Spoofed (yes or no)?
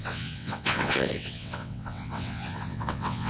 yes